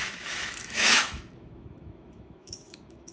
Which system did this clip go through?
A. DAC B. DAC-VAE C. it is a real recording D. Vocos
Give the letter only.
B